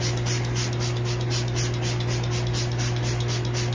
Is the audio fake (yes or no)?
no